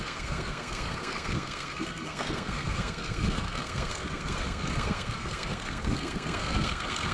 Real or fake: fake